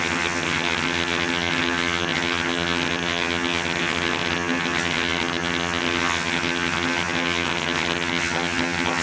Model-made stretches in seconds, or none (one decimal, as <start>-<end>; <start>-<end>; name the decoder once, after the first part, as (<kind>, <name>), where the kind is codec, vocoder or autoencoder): 0.0-9.0 (vocoder, HiFi-GAN)